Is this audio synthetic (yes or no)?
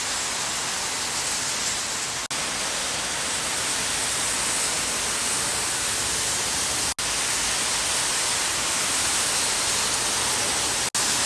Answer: no